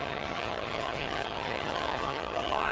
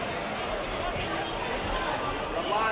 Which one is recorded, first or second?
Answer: second